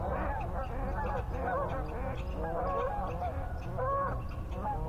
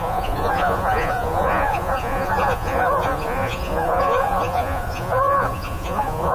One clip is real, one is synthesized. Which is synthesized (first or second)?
second